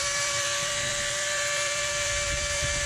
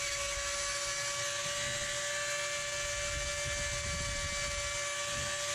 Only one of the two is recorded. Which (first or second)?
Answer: second